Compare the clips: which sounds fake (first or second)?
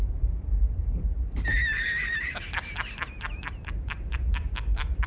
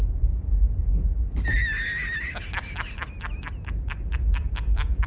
first